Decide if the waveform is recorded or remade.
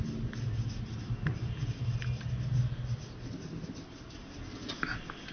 recorded